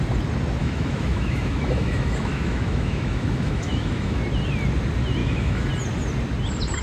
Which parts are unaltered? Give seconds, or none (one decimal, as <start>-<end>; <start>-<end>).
0.0-0.6; 4.2-5.2; 5.7-6.8